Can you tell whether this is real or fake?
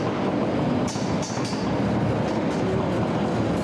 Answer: fake